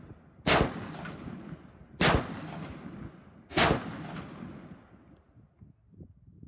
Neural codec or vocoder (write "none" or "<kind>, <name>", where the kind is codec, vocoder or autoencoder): none